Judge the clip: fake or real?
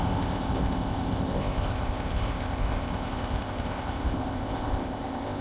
fake